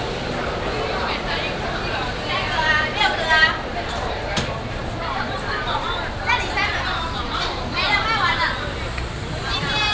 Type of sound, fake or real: fake